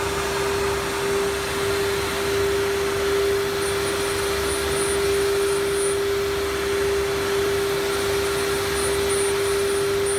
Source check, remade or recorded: recorded